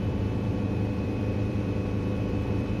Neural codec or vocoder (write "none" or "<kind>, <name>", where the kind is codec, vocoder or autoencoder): vocoder, BigVGAN v2